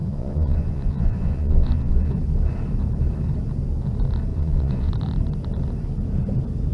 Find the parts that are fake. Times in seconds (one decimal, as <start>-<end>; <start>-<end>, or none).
0.0-2.2; 4.3-4.9